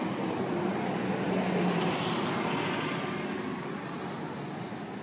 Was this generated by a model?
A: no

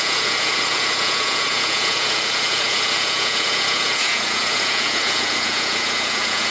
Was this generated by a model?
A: yes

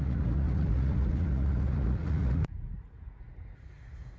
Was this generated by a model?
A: yes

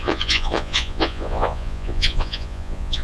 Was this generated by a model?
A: yes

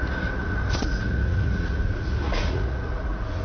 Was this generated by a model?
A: yes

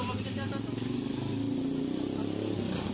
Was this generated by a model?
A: no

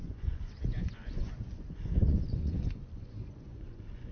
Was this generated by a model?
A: yes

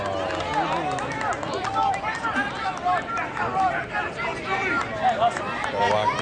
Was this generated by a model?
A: no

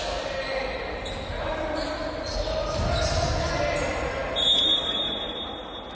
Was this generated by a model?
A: no